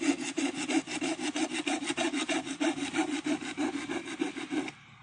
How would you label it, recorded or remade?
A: recorded